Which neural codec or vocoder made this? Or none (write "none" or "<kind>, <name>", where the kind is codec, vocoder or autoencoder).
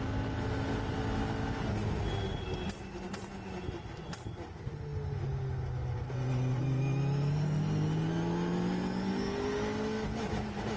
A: none